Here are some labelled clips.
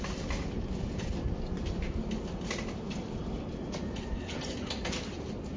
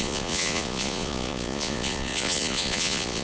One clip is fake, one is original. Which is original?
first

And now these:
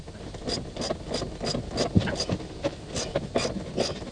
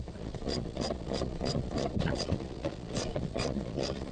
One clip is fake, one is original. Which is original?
first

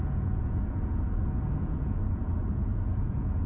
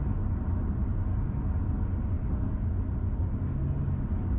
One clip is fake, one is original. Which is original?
second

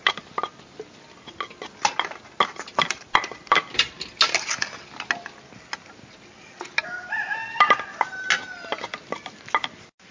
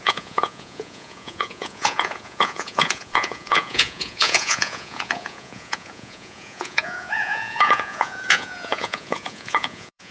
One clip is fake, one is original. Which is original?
first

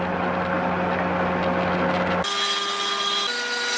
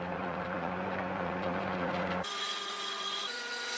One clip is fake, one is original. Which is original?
first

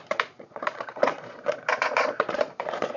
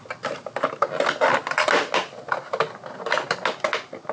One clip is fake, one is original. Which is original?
second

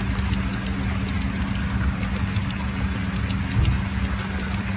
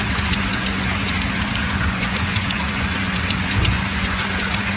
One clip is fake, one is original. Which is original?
first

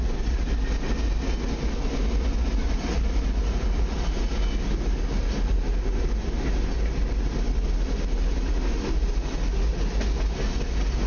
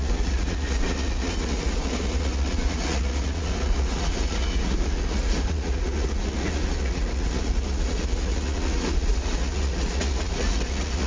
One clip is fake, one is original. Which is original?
first